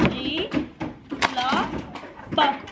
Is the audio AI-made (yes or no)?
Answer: no